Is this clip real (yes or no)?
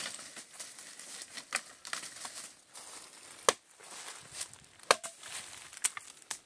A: yes